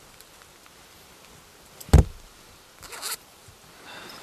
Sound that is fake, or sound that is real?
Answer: real